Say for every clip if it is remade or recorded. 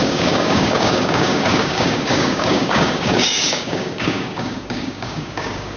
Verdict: remade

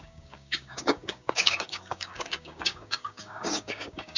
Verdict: remade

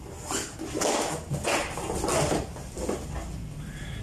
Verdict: recorded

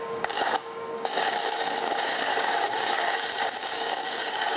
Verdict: remade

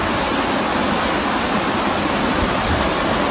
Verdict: recorded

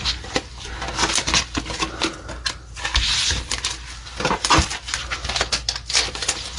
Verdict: recorded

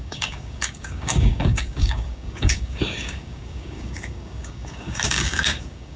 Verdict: remade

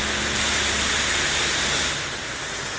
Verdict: recorded